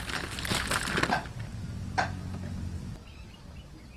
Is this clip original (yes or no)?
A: yes